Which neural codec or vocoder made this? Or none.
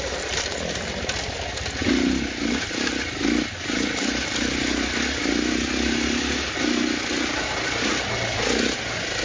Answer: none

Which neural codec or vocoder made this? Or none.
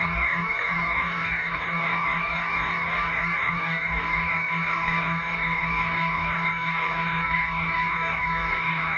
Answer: codec, DAC